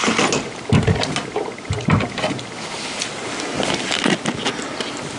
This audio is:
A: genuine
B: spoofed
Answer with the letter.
A